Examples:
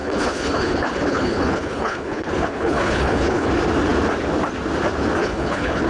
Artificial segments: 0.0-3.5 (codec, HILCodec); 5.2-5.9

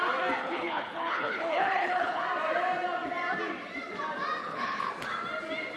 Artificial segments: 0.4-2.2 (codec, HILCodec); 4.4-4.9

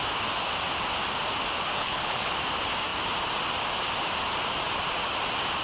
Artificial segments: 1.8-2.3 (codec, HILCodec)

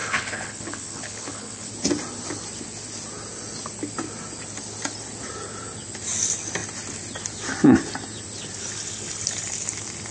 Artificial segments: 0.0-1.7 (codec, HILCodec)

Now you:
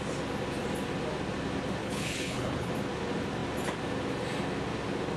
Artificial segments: 1.8-2.7 (codec, HILCodec)